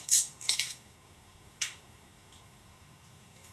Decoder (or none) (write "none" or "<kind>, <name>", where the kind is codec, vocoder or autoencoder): codec, SNAC